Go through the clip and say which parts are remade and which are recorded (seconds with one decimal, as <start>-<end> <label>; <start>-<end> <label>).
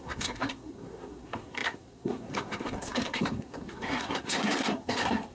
0.0-5.3 remade